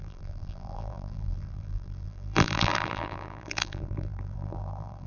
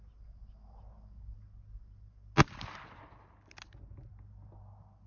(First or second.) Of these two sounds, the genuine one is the second